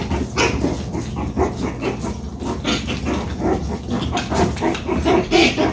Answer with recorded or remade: recorded